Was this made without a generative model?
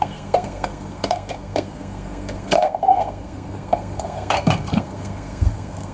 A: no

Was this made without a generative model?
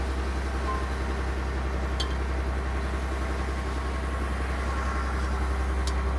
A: yes